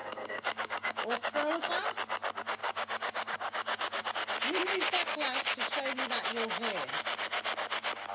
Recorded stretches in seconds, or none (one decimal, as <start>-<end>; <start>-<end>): 1.7-2.6; 4.1-8.1